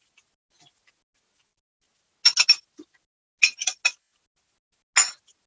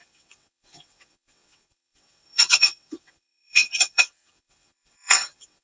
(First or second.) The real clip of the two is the first